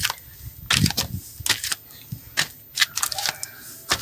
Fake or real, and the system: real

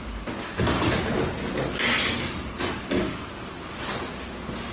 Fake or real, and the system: real